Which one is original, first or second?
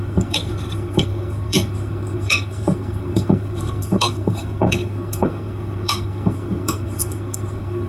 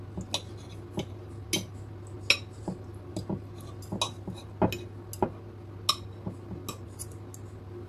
second